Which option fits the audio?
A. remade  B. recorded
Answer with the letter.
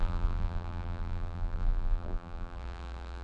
A